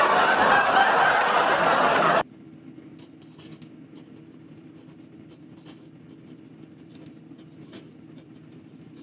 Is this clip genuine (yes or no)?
yes